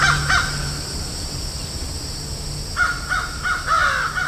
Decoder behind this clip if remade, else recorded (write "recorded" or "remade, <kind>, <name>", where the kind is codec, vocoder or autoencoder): recorded